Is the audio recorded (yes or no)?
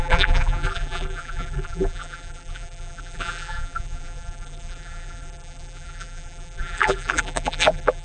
no